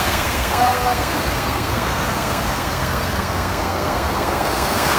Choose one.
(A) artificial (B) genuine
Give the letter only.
A